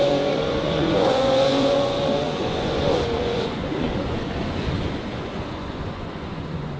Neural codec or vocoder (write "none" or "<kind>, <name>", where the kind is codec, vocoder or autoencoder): vocoder, Vocos